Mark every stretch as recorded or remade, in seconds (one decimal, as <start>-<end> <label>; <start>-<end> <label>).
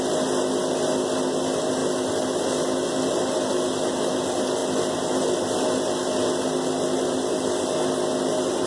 0.0-8.7 recorded